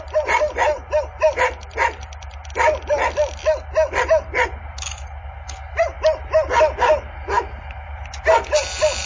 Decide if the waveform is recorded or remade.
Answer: recorded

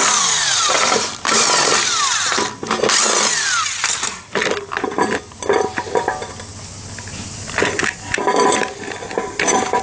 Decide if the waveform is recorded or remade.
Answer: remade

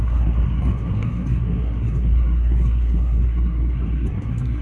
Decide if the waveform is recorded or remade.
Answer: remade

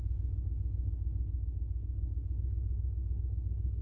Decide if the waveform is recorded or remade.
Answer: remade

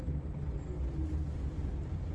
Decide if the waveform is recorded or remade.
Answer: recorded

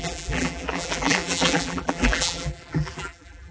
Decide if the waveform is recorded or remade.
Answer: remade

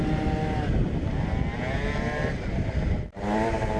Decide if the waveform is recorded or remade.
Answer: recorded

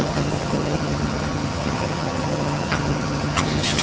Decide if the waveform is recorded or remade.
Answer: remade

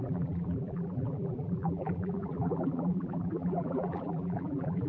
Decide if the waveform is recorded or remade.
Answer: remade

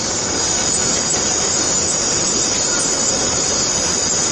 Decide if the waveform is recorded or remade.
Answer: recorded